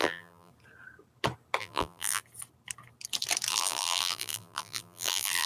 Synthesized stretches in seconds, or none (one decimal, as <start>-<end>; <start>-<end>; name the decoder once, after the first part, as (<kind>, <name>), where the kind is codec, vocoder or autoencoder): 0.0-0.5 (vocoder, BigVGAN v2); 1.6-2.2; 3.5-5.5